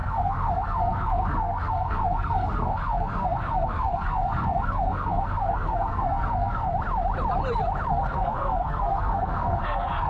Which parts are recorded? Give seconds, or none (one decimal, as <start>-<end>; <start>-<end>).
6.7-7.9